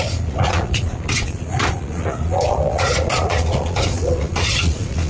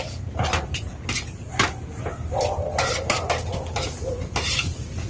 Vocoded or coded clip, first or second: first